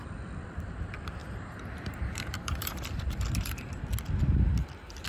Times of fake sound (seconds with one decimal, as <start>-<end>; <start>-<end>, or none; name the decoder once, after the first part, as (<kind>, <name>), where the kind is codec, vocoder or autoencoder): 1.2-3.7 (vocoder, BigVGAN v2)